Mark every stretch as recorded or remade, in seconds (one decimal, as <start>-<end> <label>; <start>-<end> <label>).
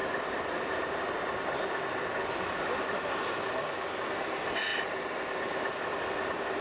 0.0-6.6 recorded